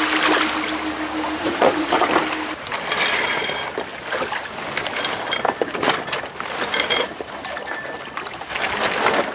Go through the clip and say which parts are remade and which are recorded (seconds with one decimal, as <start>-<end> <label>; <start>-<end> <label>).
0.0-1.4 recorded; 1.4-2.1 remade; 2.1-9.3 recorded